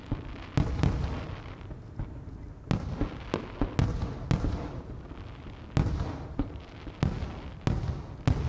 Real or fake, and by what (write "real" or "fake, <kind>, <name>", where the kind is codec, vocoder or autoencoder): real